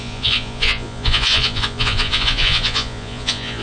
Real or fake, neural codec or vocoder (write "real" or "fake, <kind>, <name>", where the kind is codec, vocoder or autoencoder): fake, vocoder, Vocos